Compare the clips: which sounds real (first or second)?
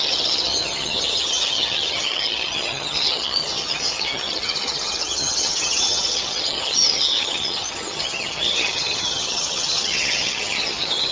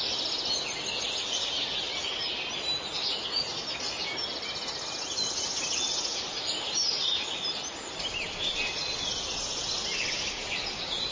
second